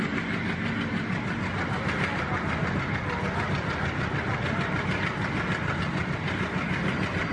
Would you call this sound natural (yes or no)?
yes